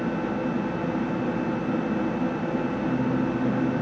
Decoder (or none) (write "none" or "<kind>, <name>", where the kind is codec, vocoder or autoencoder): none